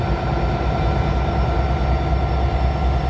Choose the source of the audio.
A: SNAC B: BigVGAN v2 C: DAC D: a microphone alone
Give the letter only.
D